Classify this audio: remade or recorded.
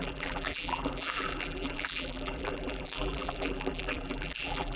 remade